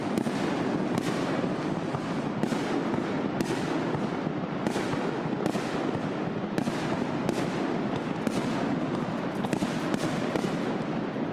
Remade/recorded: recorded